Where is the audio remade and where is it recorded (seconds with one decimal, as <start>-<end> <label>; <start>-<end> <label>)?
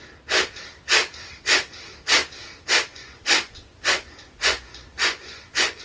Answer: 0.0-2.9 recorded; 2.9-5.8 remade